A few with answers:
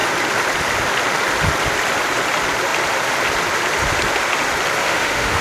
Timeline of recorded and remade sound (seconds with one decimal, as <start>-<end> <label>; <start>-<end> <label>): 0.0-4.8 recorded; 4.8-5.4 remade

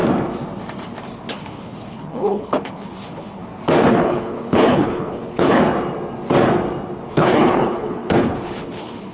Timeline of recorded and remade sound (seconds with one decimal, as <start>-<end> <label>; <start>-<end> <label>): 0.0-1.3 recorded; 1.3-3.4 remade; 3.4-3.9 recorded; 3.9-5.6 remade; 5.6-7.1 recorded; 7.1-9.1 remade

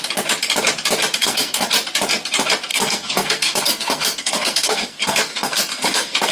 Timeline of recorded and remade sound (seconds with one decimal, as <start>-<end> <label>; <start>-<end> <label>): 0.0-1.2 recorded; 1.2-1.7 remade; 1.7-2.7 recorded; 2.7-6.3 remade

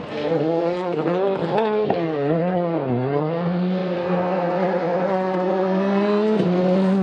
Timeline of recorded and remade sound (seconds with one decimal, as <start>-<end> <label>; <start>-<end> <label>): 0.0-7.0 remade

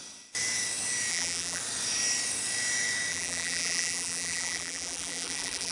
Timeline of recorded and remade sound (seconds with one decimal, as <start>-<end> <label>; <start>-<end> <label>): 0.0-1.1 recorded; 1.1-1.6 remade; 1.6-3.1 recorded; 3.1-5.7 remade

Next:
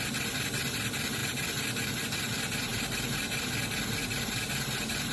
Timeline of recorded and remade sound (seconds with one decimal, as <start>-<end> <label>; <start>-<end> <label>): 0.0-5.1 recorded